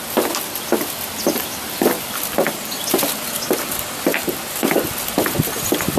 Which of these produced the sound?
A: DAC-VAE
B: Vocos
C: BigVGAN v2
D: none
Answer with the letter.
D